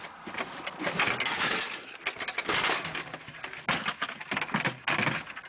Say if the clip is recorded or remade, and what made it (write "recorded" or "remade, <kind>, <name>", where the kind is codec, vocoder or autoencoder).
recorded